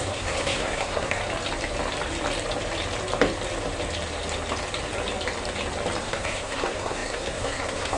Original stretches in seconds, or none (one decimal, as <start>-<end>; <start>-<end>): 1.2-6.0